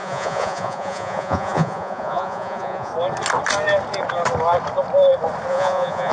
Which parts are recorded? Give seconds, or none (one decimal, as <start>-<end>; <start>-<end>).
2.9-5.5